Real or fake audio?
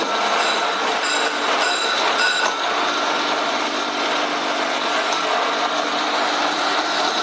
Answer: real